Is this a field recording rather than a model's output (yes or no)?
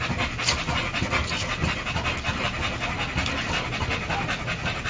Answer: yes